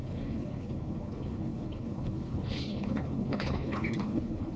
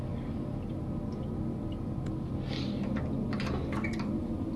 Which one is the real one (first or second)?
second